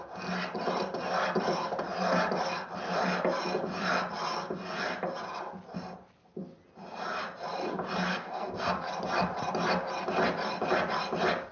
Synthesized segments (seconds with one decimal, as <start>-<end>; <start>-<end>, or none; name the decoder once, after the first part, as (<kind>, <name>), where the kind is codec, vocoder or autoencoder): 8.1-8.7 (codec, SNAC)